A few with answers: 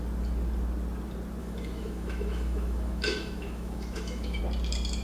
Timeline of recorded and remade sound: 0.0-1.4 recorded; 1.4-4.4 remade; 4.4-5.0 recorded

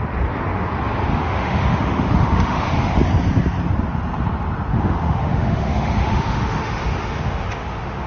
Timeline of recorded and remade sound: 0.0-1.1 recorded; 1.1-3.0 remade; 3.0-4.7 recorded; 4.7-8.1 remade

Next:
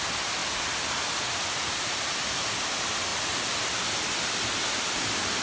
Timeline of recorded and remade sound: 0.0-5.4 recorded

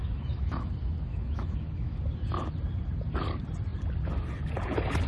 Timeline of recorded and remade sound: 0.0-0.7 remade; 0.7-1.1 recorded; 1.1-2.0 remade; 2.0-5.1 recorded

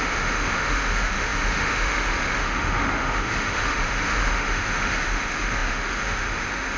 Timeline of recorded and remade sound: 0.0-6.8 remade

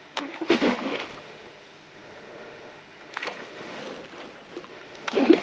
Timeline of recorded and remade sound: 0.0-3.8 remade; 3.8-4.7 recorded; 4.7-5.4 remade